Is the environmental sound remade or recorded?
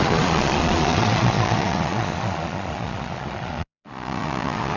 remade